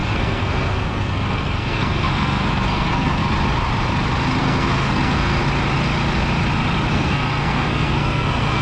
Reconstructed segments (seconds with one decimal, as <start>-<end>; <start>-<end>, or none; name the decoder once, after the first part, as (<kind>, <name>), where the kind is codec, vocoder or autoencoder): 0.0-3.2 (codec, SNAC); 4.4-5.4; 6.9-8.6